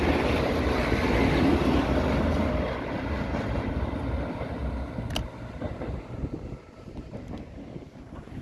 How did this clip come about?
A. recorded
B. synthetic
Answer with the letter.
A